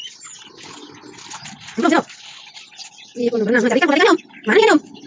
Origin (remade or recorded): recorded